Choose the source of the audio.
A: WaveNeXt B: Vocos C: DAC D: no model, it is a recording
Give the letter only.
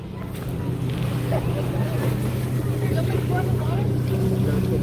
D